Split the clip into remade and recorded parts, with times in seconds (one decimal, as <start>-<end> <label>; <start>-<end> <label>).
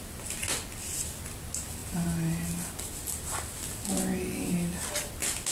0.0-5.5 recorded